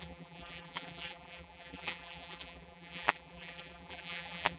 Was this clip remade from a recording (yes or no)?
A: yes